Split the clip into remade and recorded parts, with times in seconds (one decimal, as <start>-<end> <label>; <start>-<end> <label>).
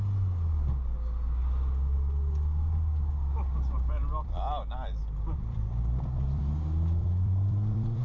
0.0-4.0 recorded; 4.0-6.4 remade; 6.4-7.0 recorded; 7.0-8.0 remade